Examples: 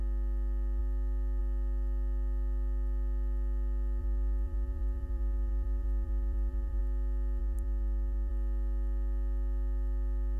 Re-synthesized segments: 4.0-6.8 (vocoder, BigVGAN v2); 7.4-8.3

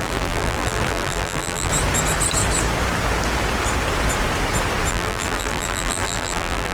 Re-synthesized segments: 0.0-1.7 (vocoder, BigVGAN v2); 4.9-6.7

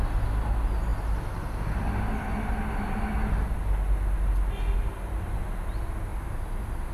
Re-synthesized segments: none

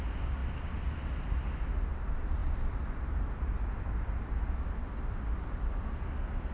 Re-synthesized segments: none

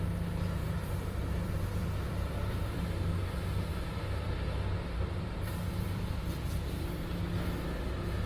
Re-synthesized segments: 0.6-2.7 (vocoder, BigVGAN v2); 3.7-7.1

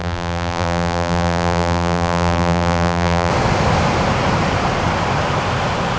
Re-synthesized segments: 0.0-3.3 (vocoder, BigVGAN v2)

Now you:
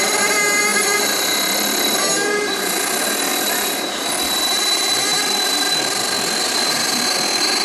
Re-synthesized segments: 0.7-1.3 (vocoder, BigVGAN v2); 3.3-4.1